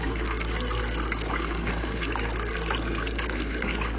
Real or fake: fake